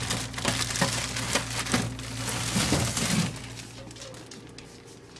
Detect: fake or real real